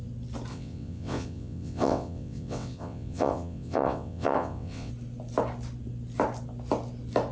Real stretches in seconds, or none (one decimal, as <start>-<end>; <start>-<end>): 0.0-0.5; 4.9-7.3